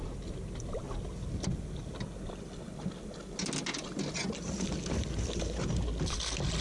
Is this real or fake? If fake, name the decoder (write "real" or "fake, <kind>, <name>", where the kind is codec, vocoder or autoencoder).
real